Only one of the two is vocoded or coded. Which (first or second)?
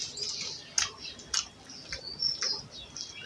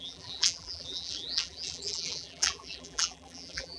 second